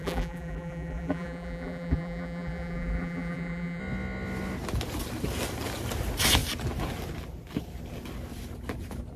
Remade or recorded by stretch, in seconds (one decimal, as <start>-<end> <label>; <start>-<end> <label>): 0.0-3.8 remade; 3.8-9.2 recorded